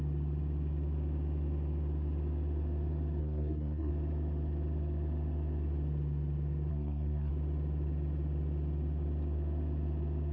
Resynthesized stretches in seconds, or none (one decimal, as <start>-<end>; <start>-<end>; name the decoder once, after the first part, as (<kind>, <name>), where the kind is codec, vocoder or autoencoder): 3.2-3.9 (codec, SNAC); 6.7-7.3